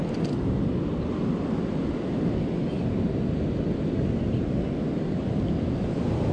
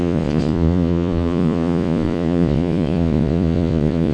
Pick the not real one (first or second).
second